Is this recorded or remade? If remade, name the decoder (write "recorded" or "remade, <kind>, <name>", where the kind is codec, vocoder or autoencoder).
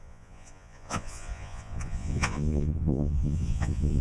remade, vocoder, Vocos